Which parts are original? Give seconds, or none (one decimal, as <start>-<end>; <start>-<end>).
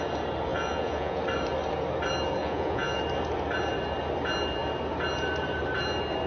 0.0-0.5; 1.2-2.4; 3.0-6.3